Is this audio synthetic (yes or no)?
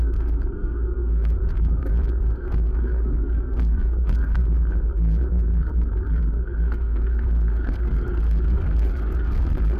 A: yes